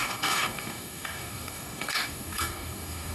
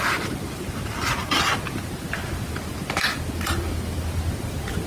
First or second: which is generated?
first